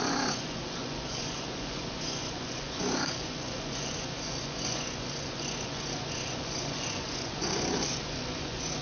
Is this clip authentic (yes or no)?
no